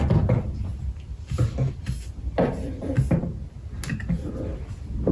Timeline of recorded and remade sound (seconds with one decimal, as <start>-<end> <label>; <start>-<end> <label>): 0.0-5.1 recorded